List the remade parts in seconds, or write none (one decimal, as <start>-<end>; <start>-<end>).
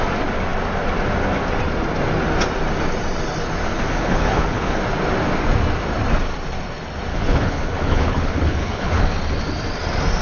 3.7-4.8; 7.1-9.0